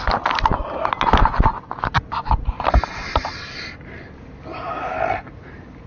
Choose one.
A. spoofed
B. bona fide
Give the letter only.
B